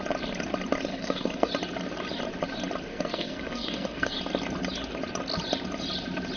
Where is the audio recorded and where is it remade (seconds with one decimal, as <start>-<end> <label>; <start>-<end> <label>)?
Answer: 0.0-0.9 recorded; 0.9-1.5 remade; 1.5-2.9 recorded; 2.9-4.2 remade; 4.2-6.4 recorded